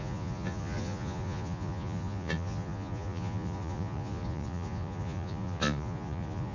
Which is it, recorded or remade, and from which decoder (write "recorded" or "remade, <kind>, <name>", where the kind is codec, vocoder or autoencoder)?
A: remade, vocoder, Vocos